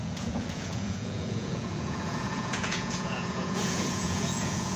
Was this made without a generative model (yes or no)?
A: no